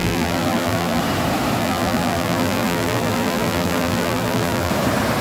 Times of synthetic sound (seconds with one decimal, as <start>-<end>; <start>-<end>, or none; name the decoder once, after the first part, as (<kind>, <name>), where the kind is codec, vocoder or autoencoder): 0.0-1.0 (vocoder, BigVGAN v2); 1.6-4.7